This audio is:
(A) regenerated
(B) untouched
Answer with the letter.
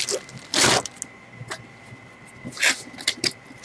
B